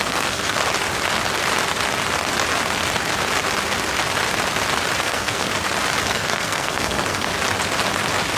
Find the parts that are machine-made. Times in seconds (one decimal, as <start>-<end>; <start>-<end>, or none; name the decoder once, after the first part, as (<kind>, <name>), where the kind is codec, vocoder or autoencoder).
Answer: 0.0-0.6 (codec, SNAC); 5.0-5.5; 6.0-7.3